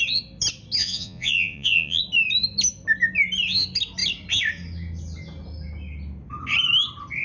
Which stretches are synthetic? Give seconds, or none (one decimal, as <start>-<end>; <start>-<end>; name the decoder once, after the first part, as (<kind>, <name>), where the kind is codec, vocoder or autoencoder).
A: 0.8-2.0 (vocoder, Vocos)